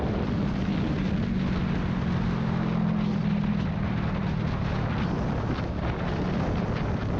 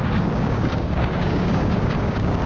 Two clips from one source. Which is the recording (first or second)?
first